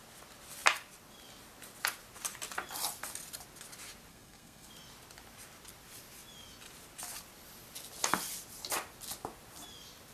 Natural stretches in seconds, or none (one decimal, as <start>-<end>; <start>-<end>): 0.0-4.1; 4.7-10.1